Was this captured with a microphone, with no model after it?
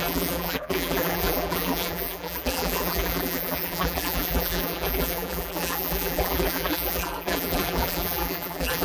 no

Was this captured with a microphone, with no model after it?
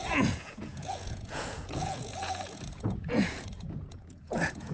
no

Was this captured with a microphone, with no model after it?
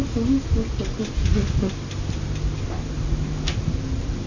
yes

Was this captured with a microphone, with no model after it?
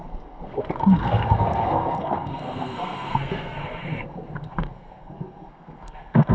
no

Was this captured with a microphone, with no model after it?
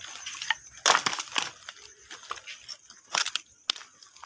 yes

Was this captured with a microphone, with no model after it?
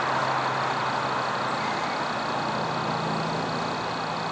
yes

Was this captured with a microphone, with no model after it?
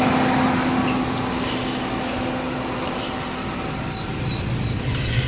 yes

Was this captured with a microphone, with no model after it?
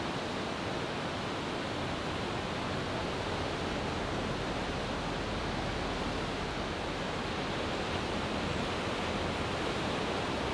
yes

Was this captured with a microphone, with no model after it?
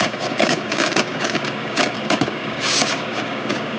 no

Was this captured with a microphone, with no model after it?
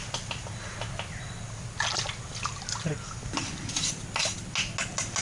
yes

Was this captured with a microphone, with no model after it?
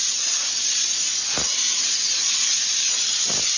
yes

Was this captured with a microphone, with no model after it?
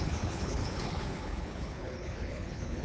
no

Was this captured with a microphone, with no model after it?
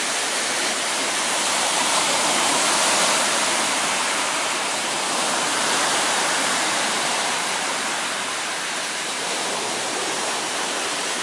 no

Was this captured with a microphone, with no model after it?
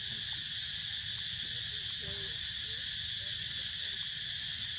yes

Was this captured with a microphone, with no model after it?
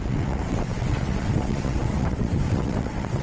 no